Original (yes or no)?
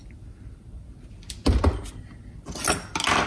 yes